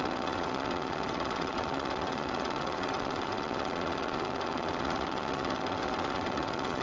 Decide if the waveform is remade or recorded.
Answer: remade